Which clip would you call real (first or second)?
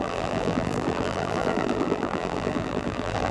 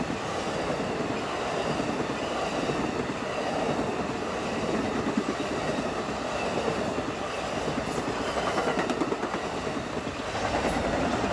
second